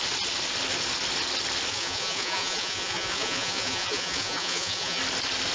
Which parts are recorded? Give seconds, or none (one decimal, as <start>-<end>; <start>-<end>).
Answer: 0.0-1.7; 5.0-5.5